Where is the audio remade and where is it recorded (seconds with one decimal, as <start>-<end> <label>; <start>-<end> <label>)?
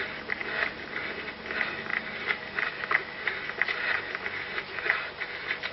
0.0-5.7 recorded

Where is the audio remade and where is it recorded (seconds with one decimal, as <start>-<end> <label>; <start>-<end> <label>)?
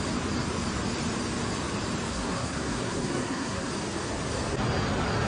0.0-2.1 recorded; 2.1-3.7 remade; 3.7-5.3 recorded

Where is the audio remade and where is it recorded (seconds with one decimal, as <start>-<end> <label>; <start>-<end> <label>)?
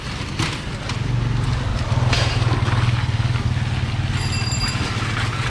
0.0-5.5 recorded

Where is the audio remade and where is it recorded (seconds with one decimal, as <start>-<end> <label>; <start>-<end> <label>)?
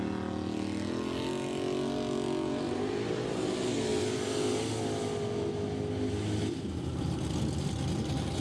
0.0-8.4 recorded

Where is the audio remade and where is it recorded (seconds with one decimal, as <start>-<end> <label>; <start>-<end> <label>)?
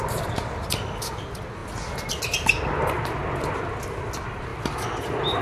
0.0-5.4 recorded